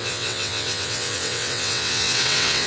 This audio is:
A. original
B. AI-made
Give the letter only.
B